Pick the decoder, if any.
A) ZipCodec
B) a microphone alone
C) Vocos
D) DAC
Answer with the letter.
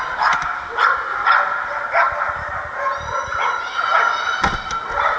B